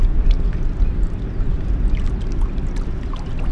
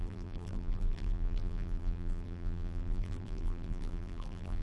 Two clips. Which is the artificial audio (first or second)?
second